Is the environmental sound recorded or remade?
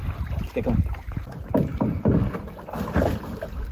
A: recorded